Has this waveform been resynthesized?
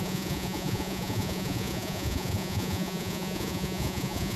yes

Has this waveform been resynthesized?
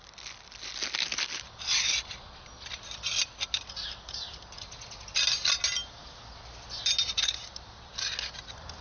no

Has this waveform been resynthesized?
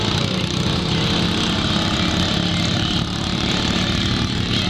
yes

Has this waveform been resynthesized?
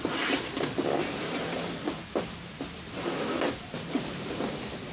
no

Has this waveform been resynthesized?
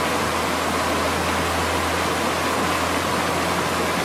no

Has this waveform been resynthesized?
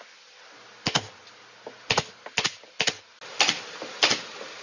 no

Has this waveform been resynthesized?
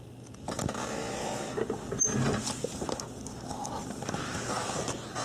no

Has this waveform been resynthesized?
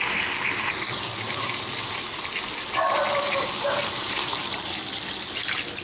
no